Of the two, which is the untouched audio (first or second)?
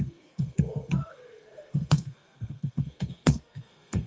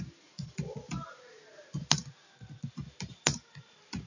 second